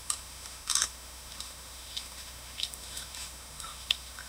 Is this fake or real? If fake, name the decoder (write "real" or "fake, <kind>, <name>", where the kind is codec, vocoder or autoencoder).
fake, autoencoder, DAC-VAE